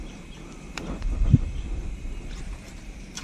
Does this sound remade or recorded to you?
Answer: remade